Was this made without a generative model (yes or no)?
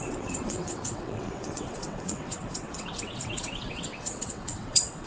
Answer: no